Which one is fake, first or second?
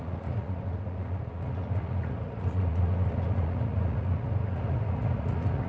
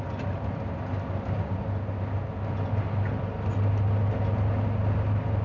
first